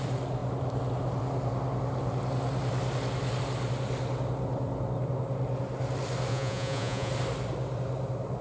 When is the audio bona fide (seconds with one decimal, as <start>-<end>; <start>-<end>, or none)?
0.0-6.3; 7.1-8.4